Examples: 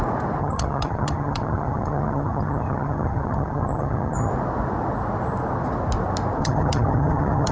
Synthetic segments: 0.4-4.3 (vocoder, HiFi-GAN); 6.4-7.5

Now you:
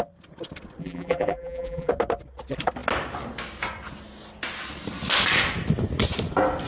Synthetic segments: 0.8-1.9 (vocoder, BigVGAN v2)

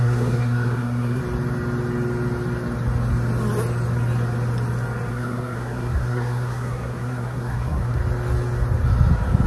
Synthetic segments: 0.0-1.2 (codec, SNAC); 5.1-8.0

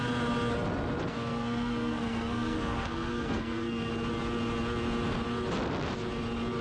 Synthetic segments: 1.1-3.9 (codec, SNAC)

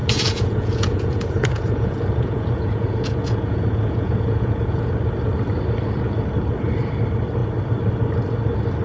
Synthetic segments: 0.0-4.9 (vocoder, Vocos)